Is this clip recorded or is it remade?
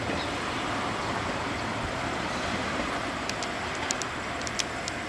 remade